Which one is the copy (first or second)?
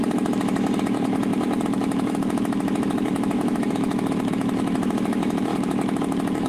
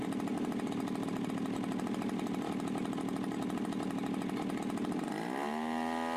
first